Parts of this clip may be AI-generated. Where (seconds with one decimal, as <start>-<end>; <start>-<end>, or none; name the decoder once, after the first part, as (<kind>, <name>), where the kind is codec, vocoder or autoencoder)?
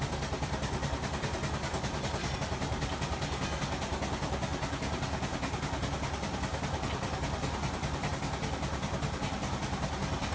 none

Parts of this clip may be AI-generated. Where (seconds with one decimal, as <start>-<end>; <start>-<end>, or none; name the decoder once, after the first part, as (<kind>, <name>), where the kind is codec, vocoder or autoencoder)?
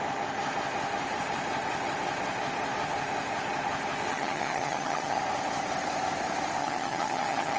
4.1-5.2 (vocoder, HiFi-GAN); 6.6-7.6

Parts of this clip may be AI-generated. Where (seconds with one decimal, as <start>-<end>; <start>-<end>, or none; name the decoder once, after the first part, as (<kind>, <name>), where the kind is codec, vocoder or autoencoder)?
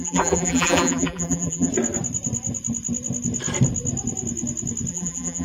0.0-1.7 (vocoder, BigVGAN v2); 4.9-5.4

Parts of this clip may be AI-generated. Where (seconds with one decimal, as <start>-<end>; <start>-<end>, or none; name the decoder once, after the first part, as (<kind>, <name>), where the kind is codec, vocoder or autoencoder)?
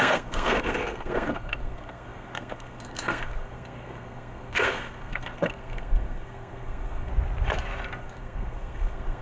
0.0-7.1 (codec, SNAC); 8.0-9.2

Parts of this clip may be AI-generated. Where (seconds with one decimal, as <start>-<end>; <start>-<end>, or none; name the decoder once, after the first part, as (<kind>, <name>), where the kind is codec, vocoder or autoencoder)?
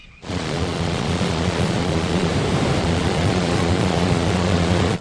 0.0-2.3 (vocoder, Vocos); 2.8-5.0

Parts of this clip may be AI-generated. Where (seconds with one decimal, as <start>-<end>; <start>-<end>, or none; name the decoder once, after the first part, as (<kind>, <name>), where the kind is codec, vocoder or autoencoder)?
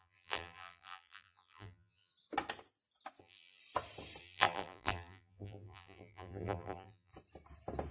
0.0-2.1 (vocoder, BigVGAN v2); 3.2-3.6; 4.2-7.1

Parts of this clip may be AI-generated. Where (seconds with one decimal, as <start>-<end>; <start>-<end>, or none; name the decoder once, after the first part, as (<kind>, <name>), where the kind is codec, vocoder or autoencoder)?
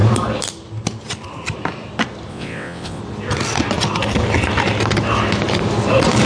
2.3-3.0 (vocoder, WaveNeXt)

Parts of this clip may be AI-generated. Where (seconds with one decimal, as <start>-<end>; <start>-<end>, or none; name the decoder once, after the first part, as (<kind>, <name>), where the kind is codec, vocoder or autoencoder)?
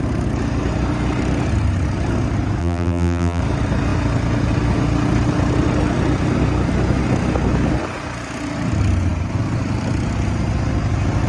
2.6-3.4 (vocoder, BigVGAN v2)